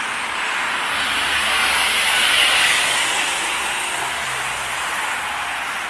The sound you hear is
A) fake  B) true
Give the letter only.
B